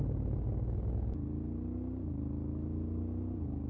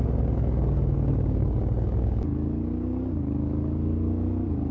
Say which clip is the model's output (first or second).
second